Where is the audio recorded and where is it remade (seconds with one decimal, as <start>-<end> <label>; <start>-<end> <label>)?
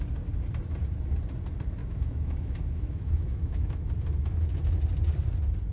0.0-1.8 recorded; 1.8-3.9 remade; 3.9-5.7 recorded